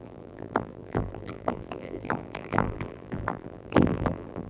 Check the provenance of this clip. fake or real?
fake